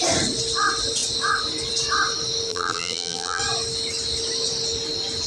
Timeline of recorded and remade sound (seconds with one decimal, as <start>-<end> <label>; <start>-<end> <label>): 0.0-2.5 recorded; 2.5-3.4 remade; 3.4-5.3 recorded